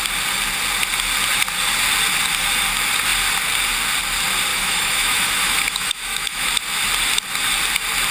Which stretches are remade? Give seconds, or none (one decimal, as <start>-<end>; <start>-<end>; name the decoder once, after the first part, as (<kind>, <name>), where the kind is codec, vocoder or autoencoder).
4.5-6.5 (autoencoder, DAC-VAE)